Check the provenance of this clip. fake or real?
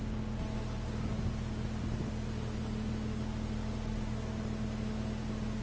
real